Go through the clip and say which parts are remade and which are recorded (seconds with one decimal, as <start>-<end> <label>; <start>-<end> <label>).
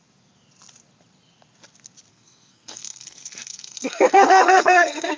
0.0-2.1 recorded; 2.1-5.2 remade